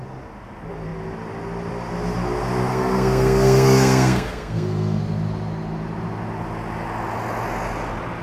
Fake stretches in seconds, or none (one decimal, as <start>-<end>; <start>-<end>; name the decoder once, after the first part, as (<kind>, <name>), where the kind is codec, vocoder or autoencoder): 2.7-5.0 (codec, SNAC)